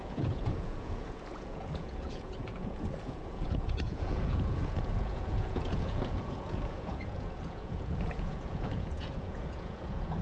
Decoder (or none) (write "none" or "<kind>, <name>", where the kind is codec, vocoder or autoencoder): vocoder, Vocos